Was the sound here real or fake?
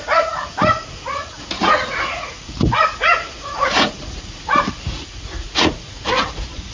fake